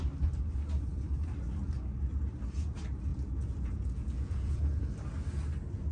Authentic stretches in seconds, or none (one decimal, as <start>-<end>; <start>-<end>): 0.0-3.1; 4.6-5.9